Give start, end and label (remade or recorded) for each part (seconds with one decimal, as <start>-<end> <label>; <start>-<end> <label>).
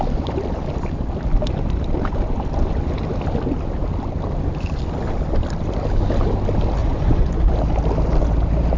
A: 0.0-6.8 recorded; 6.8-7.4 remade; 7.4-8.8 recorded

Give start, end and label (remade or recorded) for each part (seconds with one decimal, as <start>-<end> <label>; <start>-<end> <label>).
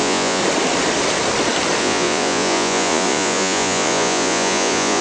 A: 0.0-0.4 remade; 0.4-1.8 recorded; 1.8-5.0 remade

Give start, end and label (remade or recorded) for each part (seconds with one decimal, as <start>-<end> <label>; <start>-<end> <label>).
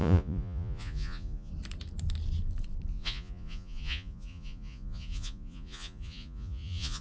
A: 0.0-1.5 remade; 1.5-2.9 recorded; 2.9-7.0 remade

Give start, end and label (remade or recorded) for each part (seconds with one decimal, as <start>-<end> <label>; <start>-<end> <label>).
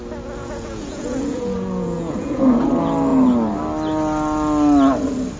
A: 0.0-0.4 recorded; 0.4-2.7 remade; 2.7-5.4 recorded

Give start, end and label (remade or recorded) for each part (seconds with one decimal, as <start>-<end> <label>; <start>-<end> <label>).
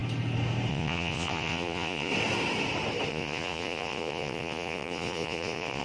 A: 0.0-0.7 recorded; 0.7-2.1 remade; 2.1-3.1 recorded; 3.1-5.8 remade